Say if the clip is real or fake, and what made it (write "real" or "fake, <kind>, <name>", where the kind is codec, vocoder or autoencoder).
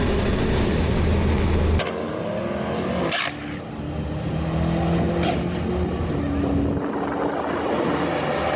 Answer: real